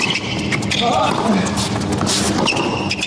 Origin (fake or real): real